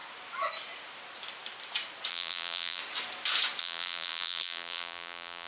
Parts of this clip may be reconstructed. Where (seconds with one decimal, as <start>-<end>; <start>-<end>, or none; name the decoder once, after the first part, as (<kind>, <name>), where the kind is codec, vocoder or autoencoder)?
2.1-2.8 (vocoder, BigVGAN v2); 3.6-5.5